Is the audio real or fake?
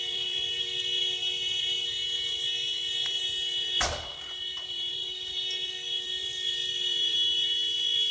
real